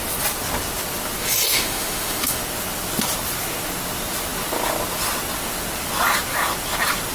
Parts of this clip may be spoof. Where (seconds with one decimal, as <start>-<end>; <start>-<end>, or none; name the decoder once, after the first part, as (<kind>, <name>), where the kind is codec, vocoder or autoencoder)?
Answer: 1.5-2.4 (autoencoder, DAC-VAE)